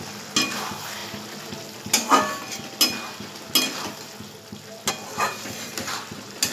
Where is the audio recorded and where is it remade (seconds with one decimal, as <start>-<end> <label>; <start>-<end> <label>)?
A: 0.0-6.5 recorded